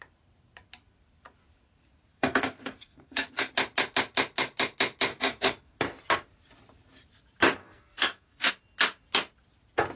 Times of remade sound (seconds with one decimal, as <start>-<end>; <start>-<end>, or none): 2.1-3.5; 5.1-5.8; 7.6-8.5